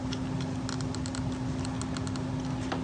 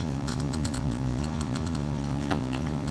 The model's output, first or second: second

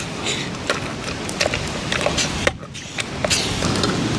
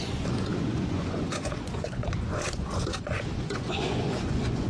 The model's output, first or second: second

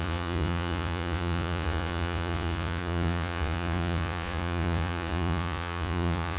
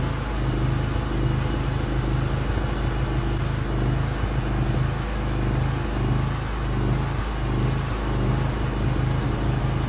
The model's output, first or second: first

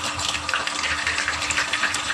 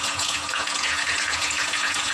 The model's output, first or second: second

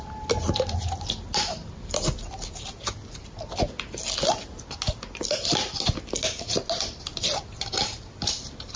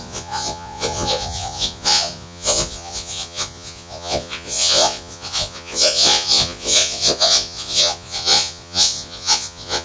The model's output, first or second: second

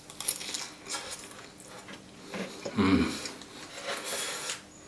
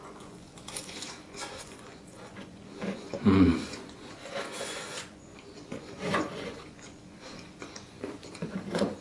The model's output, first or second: second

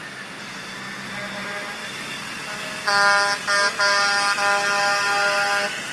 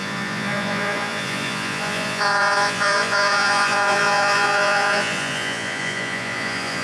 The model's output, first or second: second